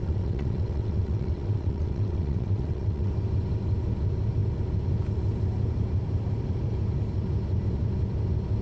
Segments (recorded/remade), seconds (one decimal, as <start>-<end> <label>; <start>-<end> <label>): 0.0-3.1 remade; 3.1-8.6 recorded